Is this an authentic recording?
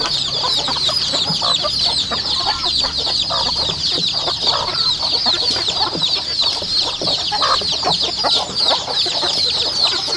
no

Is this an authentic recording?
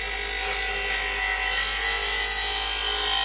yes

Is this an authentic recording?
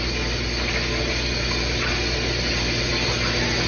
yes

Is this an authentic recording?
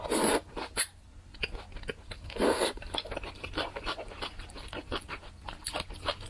yes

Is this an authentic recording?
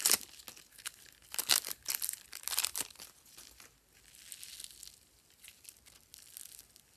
yes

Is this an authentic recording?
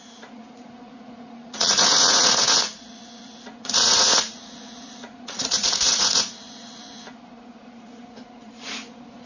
no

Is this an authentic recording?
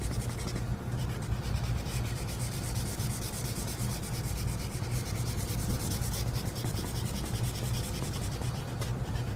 no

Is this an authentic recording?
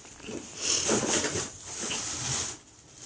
yes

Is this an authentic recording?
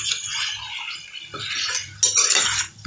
yes